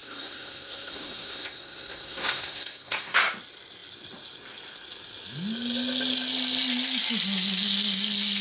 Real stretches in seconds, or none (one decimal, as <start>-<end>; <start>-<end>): 3.3-8.4